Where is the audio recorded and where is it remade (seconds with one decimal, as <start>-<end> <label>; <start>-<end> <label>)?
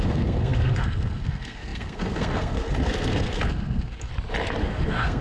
0.0-4.1 remade; 4.1-4.6 recorded; 4.6-5.2 remade